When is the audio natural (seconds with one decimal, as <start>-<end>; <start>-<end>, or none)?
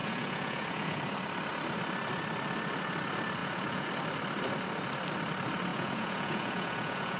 1.0-3.4; 3.9-5.7